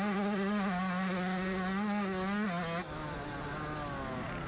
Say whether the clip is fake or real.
real